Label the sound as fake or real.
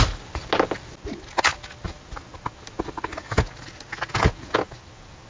real